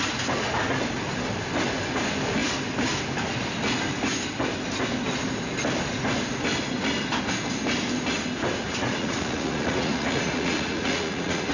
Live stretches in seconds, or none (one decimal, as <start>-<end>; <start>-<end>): 0.0-8.6